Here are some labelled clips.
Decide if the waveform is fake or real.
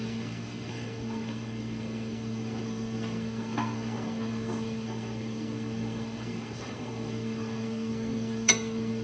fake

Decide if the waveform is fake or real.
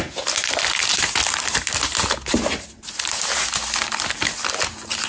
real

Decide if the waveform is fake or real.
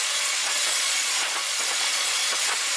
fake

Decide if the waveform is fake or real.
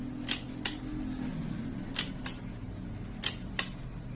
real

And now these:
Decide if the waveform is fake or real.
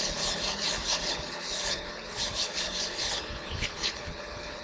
fake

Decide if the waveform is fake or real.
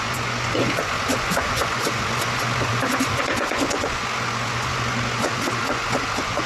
fake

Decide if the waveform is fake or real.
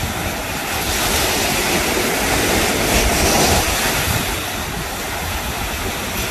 real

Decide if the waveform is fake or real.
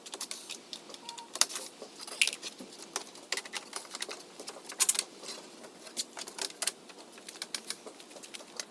real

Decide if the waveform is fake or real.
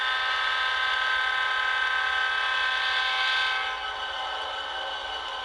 real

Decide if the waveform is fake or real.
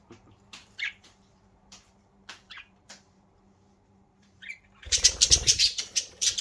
fake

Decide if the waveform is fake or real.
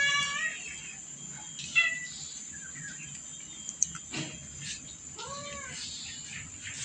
real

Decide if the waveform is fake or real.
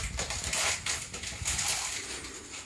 real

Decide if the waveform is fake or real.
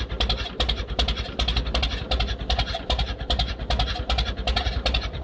real